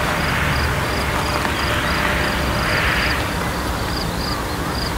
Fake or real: real